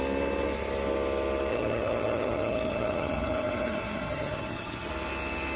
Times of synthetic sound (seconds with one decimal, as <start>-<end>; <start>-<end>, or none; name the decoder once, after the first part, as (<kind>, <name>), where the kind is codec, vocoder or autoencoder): 1.5-4.9 (vocoder, HiFi-GAN)